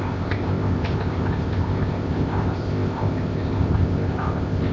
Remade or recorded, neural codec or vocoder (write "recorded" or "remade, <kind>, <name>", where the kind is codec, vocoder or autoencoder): remade, codec, ZipCodec